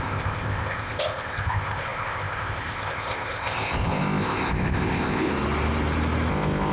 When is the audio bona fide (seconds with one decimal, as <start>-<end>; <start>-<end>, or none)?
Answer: 5.3-6.3